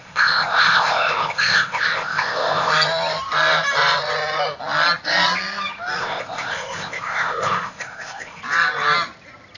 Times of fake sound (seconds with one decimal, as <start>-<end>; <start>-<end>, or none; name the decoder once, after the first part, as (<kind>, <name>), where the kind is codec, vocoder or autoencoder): 0.0-2.7 (codec, ZipCodec); 6.0-8.4